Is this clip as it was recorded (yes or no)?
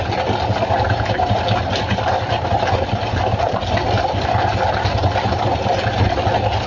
yes